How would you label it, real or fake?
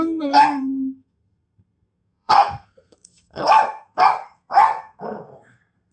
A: fake